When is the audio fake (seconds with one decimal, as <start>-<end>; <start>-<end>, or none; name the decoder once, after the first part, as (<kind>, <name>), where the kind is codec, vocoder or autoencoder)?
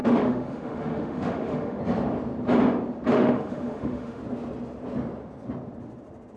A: 0.0-1.8 (autoencoder, DAC-VAE); 3.1-4.2